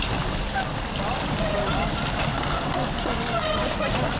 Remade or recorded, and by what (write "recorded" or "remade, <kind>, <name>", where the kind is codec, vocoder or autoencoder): recorded